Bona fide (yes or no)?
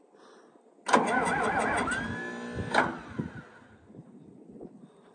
yes